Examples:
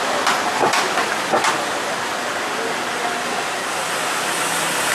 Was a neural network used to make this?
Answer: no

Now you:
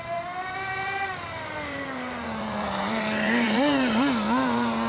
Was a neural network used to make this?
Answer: yes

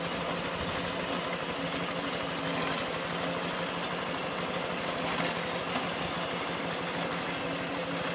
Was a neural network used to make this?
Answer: no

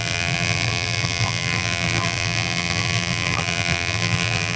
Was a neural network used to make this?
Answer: yes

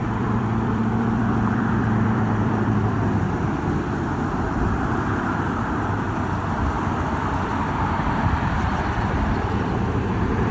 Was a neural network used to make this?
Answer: yes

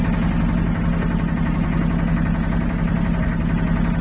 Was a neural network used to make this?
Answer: no